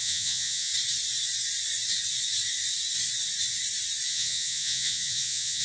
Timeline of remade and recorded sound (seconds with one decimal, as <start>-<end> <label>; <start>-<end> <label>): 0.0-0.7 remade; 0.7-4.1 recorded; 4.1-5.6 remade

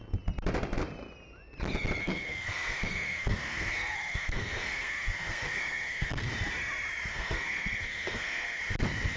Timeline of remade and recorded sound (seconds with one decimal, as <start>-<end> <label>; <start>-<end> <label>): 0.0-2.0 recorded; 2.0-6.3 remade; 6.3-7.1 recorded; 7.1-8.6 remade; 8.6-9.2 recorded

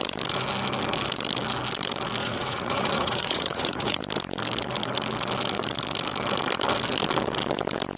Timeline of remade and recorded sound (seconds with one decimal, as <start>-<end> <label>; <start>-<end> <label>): 0.0-2.2 recorded; 2.2-4.0 remade; 4.0-8.0 recorded

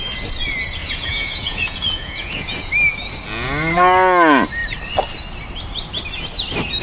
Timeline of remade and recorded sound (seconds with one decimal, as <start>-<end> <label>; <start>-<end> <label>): 0.0-0.8 recorded; 0.8-2.7 remade; 2.7-6.8 recorded

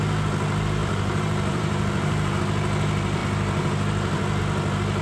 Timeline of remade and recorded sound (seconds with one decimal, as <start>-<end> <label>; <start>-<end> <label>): 0.0-0.8 recorded; 0.8-2.4 remade; 2.4-5.0 recorded